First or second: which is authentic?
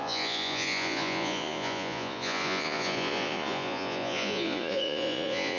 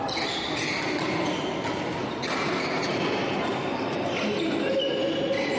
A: second